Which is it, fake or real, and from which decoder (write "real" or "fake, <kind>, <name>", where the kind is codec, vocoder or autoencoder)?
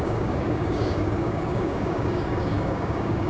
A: fake, codec, DAC